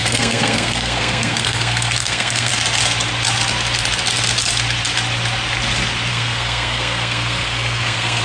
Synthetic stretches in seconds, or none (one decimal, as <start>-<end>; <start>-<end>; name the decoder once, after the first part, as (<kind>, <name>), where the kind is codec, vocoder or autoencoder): 0.0-2.5 (codec, SNAC); 6.1-8.2